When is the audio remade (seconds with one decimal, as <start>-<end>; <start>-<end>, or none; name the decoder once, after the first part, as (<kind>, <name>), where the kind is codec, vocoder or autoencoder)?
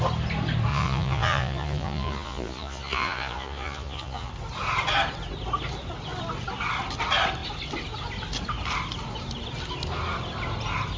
0.7-4.3 (vocoder, Vocos)